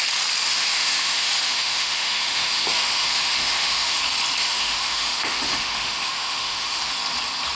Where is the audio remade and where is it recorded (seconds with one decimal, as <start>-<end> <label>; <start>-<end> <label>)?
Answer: 0.0-0.4 recorded; 0.4-4.0 remade; 4.0-4.4 recorded; 4.4-6.9 remade; 6.9-7.5 recorded